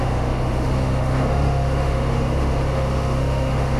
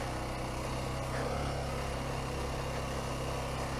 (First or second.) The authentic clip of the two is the second